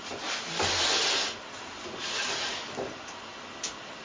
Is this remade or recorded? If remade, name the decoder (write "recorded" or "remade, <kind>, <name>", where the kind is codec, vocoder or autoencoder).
recorded